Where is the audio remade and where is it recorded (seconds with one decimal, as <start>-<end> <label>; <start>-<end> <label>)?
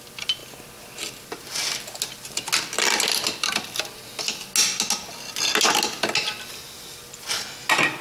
0.0-8.0 recorded